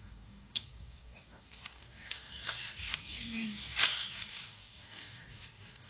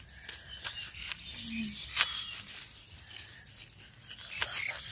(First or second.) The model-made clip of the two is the first